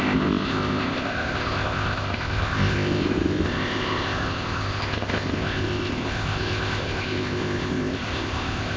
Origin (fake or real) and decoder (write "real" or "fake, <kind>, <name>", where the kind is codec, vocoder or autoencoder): fake, codec, ZipCodec